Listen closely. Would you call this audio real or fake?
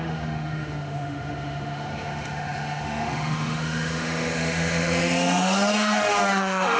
fake